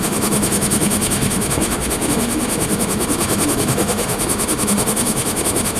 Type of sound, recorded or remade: remade